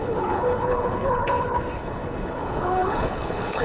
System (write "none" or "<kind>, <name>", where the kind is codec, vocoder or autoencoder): codec, HILCodec